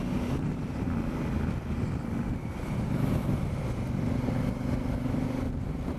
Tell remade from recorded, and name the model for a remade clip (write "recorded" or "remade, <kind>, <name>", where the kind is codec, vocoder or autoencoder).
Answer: recorded